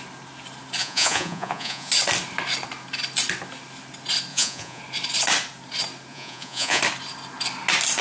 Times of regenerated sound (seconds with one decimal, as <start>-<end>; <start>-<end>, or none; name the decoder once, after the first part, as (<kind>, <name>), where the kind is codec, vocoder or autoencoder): 0.8-1.9 (vocoder, Vocos); 4.3-4.8; 6.1-6.8